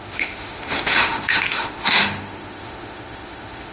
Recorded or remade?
remade